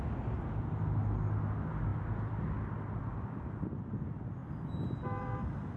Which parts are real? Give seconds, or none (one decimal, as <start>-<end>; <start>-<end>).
0.0-4.4